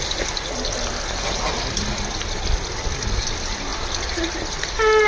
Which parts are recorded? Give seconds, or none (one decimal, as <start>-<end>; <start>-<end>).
0.0-5.1